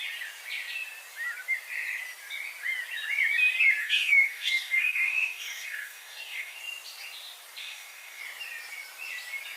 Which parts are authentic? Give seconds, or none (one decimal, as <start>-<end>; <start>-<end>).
0.0-3.8; 6.6-7.6; 8.2-9.6